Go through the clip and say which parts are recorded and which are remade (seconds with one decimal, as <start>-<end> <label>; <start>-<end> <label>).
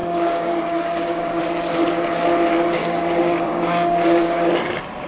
0.0-1.4 remade; 1.4-2.8 recorded; 2.8-4.5 remade; 4.5-5.1 recorded